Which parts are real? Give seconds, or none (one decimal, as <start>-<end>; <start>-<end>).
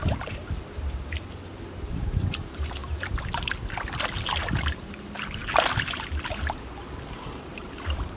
0.0-8.2